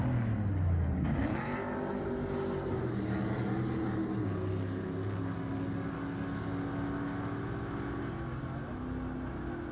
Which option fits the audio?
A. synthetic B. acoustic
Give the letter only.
B